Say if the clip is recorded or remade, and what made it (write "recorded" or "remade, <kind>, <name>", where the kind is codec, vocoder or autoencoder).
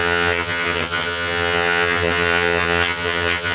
remade, vocoder, HiFi-GAN